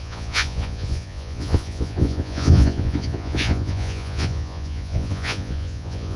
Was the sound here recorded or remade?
remade